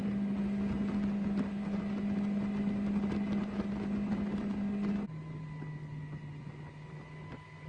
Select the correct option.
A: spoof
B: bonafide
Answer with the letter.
B